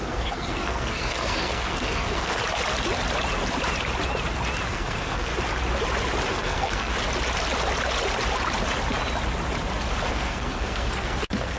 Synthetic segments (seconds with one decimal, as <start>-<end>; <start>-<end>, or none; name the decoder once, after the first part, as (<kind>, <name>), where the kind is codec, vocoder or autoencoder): 0.0-2.4 (codec, SNAC); 4.7-5.3; 6.3-6.9; 10.1-11.6

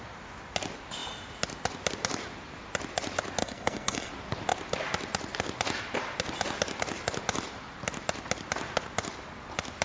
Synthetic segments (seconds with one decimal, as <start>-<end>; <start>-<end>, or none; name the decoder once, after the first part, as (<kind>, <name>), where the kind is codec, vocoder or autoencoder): 3.4-4.1 (codec, SNAC)

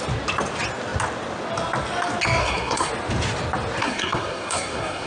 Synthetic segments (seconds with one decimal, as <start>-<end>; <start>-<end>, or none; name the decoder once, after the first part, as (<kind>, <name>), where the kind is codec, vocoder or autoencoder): 2.4-2.9 (codec, SNAC); 3.8-5.1

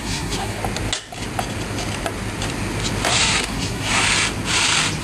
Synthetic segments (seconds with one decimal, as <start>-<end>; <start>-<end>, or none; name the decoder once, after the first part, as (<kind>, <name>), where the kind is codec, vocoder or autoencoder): 0.0-0.6 (codec, SNAC); 3.1-4.0